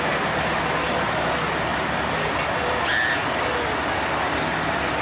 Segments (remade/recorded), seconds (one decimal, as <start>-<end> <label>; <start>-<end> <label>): 0.0-5.0 recorded